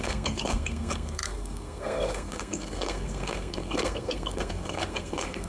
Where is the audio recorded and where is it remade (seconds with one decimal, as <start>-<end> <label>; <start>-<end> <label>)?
0.0-5.5 remade